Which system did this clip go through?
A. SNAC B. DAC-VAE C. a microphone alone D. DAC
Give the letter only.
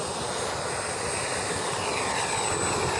C